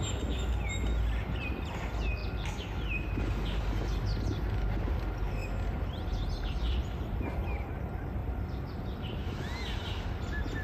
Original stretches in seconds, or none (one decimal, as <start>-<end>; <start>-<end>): 0.0-10.6